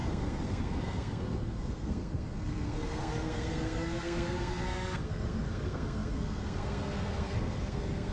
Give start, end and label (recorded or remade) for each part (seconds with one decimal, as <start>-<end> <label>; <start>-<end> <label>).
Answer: 0.0-8.1 remade